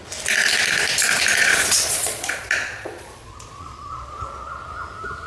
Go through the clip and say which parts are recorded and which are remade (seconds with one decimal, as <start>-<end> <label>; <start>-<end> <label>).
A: 0.0-1.4 recorded; 1.4-4.6 remade; 4.6-5.3 recorded